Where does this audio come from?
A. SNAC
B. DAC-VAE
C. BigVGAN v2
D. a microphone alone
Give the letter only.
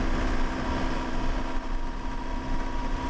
D